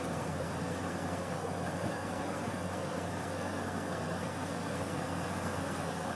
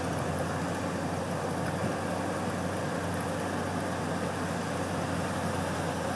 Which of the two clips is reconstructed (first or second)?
first